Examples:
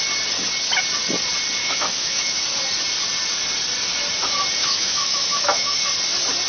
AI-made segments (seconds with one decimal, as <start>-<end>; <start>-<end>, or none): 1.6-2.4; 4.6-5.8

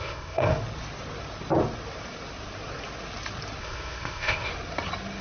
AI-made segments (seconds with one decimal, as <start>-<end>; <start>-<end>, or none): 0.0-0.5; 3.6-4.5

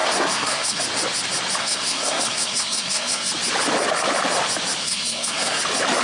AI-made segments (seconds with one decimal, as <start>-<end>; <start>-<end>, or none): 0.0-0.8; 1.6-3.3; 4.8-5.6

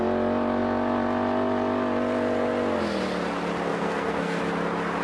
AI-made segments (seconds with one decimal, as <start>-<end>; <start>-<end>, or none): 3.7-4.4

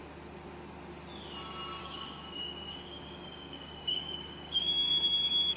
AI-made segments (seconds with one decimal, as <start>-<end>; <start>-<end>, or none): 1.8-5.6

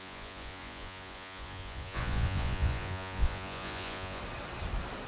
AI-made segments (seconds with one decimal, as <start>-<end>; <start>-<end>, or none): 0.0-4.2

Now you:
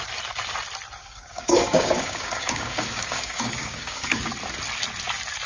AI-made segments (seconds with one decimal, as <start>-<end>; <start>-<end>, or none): 1.0-4.3